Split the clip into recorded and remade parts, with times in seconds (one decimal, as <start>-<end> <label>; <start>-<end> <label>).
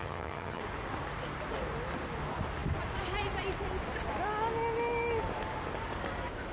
0.0-0.6 remade; 0.6-6.5 recorded